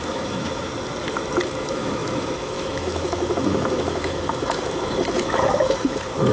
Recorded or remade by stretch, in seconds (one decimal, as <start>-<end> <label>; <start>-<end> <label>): 0.0-0.7 remade; 0.7-1.6 recorded; 1.6-6.3 remade